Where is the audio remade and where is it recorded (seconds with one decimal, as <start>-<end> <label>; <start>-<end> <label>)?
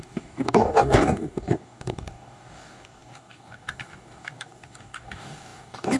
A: 0.0-6.0 remade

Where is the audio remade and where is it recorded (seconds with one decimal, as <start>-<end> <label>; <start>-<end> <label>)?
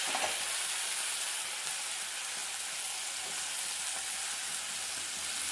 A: 0.0-5.5 recorded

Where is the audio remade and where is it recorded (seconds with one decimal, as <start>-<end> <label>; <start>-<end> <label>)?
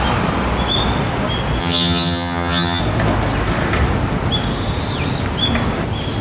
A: 0.0-1.6 recorded; 1.6-2.8 remade; 2.8-6.2 recorded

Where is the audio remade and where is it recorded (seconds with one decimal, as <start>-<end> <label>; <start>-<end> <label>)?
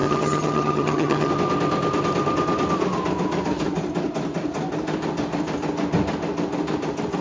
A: 0.0-1.3 remade; 1.3-7.2 recorded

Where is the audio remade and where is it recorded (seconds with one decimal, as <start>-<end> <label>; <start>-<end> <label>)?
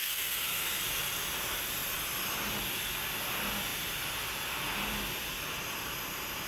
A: 0.0-0.8 remade; 0.8-6.5 recorded